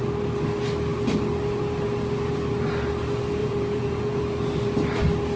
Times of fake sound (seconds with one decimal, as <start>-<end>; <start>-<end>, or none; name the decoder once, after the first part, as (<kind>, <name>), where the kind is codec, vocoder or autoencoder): 3.4-4.2 (vocoder, Vocos)